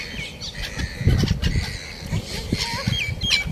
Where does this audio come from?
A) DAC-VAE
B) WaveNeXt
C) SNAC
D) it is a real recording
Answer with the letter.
D